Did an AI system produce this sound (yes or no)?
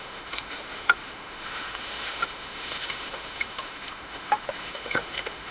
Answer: yes